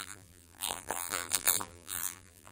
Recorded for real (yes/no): no